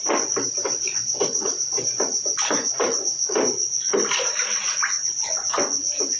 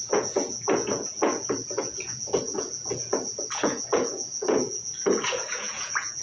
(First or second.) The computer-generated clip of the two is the second